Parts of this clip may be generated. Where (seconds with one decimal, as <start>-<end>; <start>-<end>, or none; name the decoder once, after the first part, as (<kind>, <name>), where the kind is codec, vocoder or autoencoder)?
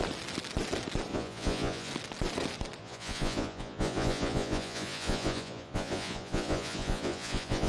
1.1-1.9 (vocoder, Vocos); 2.8-7.7